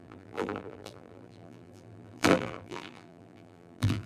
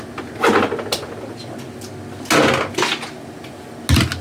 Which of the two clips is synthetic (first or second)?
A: first